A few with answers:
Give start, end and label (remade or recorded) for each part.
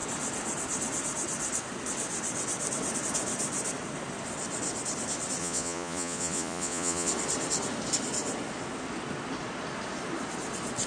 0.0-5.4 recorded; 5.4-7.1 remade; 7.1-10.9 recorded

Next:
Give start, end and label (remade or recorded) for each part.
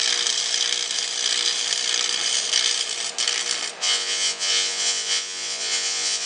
0.0-3.8 recorded; 3.8-6.3 remade